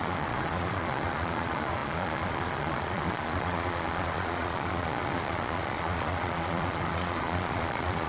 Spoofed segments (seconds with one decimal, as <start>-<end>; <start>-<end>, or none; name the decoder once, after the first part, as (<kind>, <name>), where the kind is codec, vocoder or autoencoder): 0.0-8.1 (vocoder, Vocos)